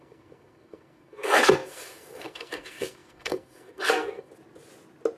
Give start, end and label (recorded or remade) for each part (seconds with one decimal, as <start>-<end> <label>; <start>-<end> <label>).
0.0-4.3 remade; 4.3-5.2 recorded